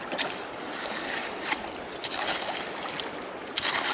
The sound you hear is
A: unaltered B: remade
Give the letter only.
A